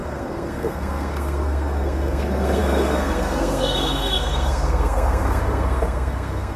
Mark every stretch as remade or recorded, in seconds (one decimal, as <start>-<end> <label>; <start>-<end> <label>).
0.0-6.6 remade